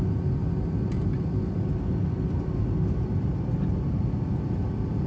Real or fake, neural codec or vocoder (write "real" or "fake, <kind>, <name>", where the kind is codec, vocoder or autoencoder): real